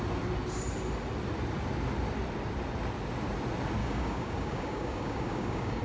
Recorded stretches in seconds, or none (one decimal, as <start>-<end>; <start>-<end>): 0.0-3.8